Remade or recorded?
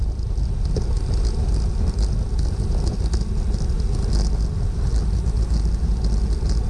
recorded